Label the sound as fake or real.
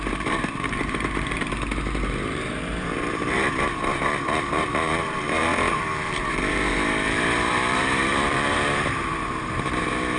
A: fake